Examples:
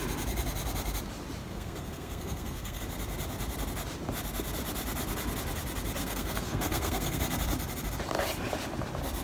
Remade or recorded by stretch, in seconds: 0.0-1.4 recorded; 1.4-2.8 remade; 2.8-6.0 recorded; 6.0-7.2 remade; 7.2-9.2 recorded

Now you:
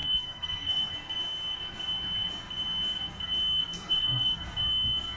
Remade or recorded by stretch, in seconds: 0.0-0.9 remade; 0.9-3.6 recorded; 3.6-4.4 remade; 4.4-5.2 recorded